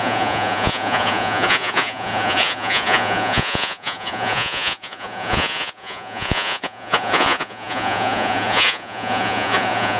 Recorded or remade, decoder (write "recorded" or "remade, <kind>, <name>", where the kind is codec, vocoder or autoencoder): remade, vocoder, Vocos